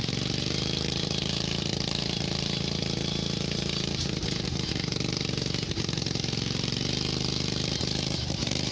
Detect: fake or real fake